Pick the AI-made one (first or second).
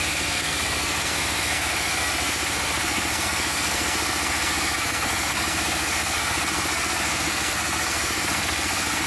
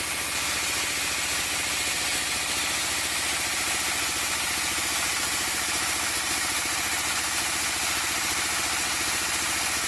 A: first